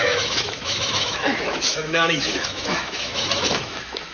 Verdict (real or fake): fake